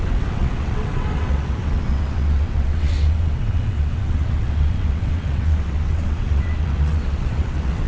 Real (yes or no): no